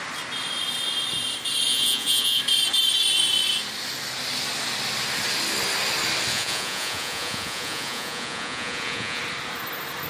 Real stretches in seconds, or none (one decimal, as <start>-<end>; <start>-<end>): 0.0-1.7; 2.4-6.3; 9.2-10.1